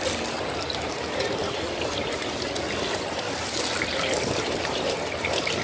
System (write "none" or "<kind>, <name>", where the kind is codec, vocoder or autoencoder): none